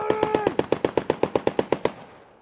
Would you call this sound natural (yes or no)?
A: yes